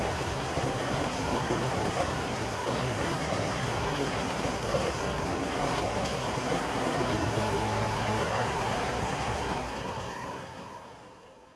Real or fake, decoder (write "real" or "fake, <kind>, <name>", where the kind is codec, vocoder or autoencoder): fake, codec, SNAC